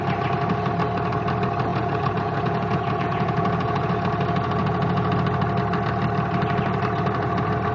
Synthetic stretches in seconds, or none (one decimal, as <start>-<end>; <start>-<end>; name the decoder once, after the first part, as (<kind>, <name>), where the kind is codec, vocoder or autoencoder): 1.7-3.9 (vocoder, Vocos); 4.6-5.1